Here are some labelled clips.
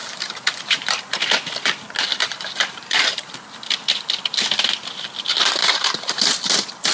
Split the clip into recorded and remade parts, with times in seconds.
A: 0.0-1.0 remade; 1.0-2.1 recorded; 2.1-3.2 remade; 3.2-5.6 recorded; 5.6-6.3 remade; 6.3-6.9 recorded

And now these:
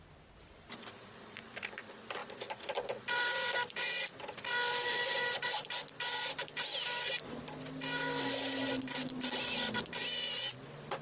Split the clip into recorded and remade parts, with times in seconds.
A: 0.0-8.6 remade; 8.6-10.0 recorded; 10.0-11.0 remade

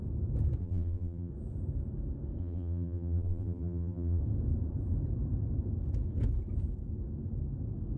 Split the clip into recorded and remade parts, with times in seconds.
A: 0.0-0.6 recorded; 0.6-1.3 remade; 1.3-2.4 recorded; 2.4-4.2 remade; 4.2-8.0 recorded

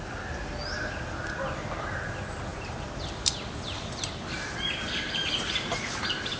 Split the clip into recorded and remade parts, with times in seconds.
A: 0.0-2.5 recorded; 2.5-6.4 remade

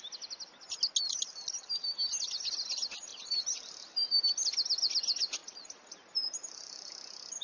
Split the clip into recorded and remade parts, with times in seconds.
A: 0.0-5.4 recorded; 5.4-6.9 remade; 6.9-7.4 recorded